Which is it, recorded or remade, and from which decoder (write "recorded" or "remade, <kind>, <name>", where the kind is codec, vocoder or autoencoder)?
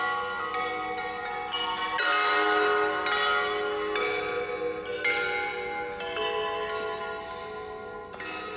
recorded